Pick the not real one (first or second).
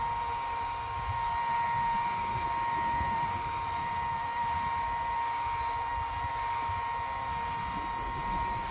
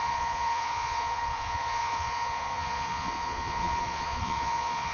second